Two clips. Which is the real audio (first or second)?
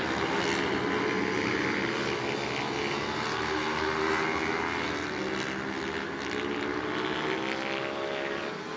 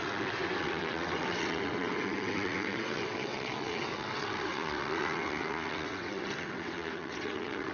first